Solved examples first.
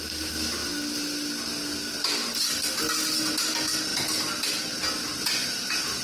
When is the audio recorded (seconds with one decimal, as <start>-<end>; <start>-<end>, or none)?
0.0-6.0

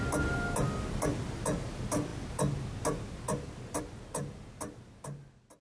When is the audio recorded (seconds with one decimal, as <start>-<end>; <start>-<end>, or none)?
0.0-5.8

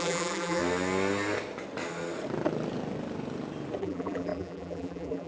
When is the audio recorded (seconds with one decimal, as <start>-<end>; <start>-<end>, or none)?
0.6-3.8